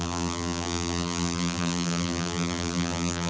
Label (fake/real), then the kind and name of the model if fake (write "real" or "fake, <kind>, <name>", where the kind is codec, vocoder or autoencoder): fake, vocoder, BigVGAN v2